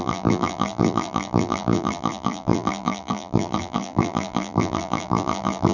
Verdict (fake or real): fake